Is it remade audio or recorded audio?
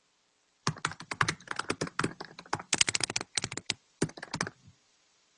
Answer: remade